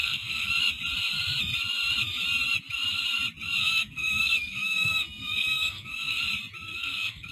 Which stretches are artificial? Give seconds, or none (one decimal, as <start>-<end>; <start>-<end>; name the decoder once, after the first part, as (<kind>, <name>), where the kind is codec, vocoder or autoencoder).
0.0-0.5 (codec, SNAC); 3.6-6.2; 6.7-7.3

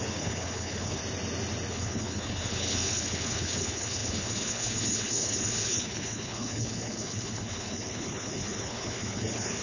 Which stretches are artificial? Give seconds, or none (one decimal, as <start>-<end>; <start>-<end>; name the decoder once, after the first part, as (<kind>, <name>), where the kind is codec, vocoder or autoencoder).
0.0-1.0 (codec, HILCodec); 1.7-9.6

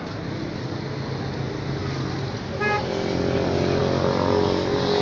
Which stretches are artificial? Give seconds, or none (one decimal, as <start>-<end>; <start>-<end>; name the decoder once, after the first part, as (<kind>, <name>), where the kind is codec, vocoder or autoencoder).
none

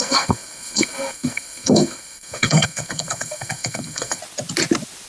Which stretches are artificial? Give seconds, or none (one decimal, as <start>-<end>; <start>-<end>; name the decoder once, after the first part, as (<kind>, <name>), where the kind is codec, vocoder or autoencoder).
0.0-4.2 (codec, SNAC)

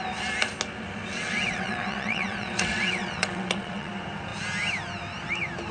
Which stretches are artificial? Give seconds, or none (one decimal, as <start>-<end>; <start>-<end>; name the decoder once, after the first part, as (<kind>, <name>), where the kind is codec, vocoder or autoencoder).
1.1-3.9 (vocoder, WaveNeXt)

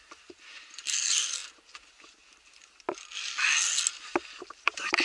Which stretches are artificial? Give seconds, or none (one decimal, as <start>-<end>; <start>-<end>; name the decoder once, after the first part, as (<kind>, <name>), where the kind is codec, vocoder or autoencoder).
0.0-1.4 (vocoder, BigVGAN v2); 4.4-5.0

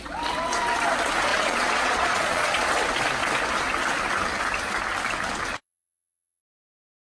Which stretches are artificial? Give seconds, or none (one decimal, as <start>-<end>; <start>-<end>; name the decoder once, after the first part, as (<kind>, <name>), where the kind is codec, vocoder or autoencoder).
1.3-2.7 (vocoder, Vocos); 5.5-6.4